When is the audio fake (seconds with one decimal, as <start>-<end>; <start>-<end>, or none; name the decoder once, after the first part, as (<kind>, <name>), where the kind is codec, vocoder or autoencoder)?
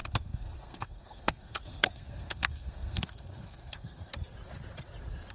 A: 0.0-4.1 (codec, SNAC)